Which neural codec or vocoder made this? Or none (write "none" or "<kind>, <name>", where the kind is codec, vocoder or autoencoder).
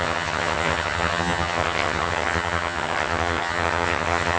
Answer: vocoder, HiFi-GAN